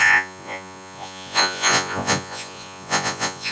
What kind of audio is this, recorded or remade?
remade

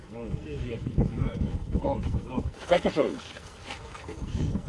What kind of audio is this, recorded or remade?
remade